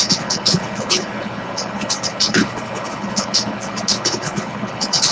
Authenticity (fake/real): fake